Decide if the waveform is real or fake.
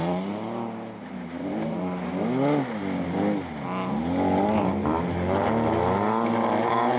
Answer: real